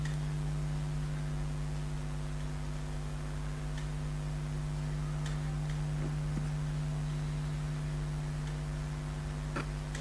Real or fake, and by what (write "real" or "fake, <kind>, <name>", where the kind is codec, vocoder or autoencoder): real